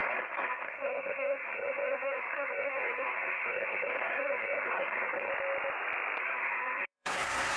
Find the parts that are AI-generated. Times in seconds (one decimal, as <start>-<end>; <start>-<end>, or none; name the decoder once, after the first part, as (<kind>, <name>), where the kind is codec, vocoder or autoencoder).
0.0-5.3 (codec, SNAC); 6.2-7.6